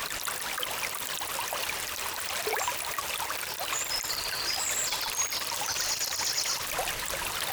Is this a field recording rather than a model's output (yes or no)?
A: yes